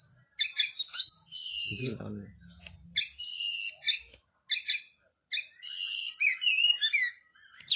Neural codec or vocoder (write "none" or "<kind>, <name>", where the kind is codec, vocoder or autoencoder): none